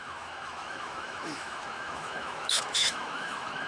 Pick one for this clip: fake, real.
fake